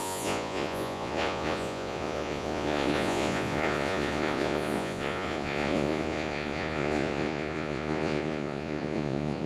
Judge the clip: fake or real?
fake